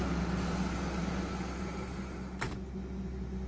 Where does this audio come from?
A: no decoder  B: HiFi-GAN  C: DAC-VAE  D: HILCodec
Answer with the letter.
A